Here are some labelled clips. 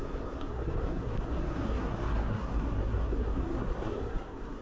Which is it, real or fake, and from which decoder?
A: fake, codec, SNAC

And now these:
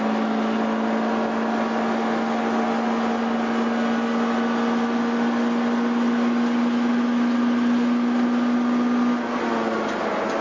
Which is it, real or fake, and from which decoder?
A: real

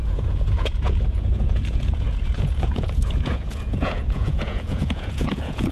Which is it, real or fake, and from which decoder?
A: fake, vocoder, Vocos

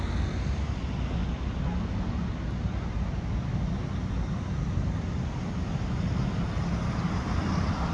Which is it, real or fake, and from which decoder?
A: real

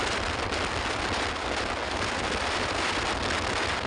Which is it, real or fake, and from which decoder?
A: real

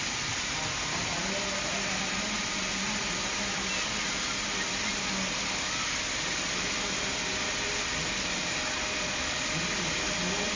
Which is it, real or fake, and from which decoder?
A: real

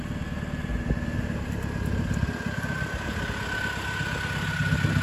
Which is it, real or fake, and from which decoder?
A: real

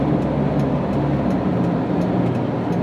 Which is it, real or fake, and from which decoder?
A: real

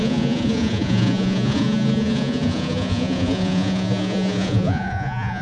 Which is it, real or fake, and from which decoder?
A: fake, vocoder, Vocos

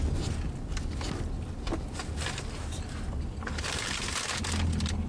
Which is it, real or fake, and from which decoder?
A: real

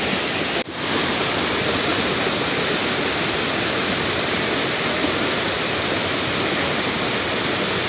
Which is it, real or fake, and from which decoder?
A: real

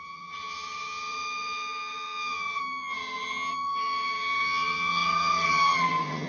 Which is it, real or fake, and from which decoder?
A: fake, vocoder, HiFi-GAN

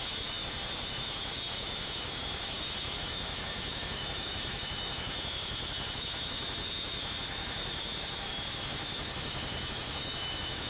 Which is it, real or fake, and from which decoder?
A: fake, autoencoder, DAC-VAE